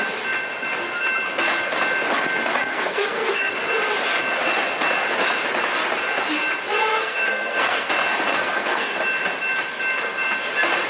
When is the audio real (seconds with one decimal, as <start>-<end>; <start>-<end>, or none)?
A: 0.0-2.7; 3.5-6.9; 7.9-8.3; 9.0-10.9